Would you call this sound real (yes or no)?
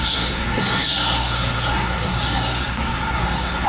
no